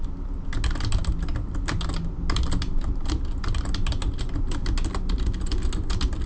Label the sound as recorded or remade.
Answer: recorded